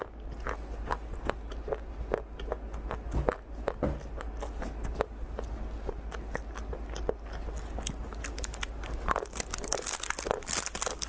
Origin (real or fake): real